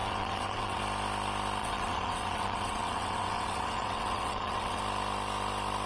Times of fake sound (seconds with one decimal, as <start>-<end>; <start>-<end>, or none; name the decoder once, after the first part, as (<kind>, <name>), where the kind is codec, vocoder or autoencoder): 0.0-0.8 (vocoder, WaveNeXt); 1.6-4.8